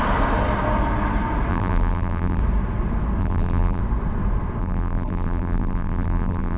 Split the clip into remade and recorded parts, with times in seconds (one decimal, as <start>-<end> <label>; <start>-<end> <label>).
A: 0.0-1.5 recorded; 1.5-2.4 remade; 2.4-3.2 recorded; 3.2-3.8 remade; 3.8-4.6 recorded; 4.6-6.6 remade

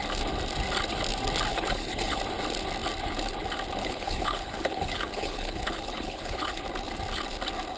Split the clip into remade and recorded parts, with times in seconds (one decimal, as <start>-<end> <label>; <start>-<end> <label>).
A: 0.0-1.5 recorded; 1.5-2.2 remade; 2.2-3.8 recorded; 3.8-6.6 remade; 6.6-7.8 recorded